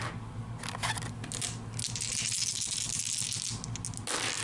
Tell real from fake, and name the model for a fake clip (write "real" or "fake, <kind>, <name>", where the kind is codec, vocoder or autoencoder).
real